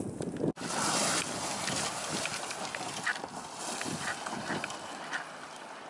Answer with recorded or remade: recorded